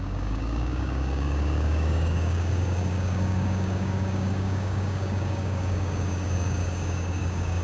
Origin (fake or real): fake